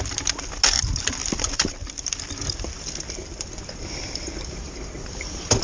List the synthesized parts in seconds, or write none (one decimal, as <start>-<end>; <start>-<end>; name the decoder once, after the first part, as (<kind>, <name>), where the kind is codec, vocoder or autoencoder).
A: 1.2-4.6 (vocoder, BigVGAN v2)